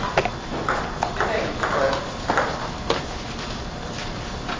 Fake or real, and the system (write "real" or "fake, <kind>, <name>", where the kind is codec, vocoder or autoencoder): real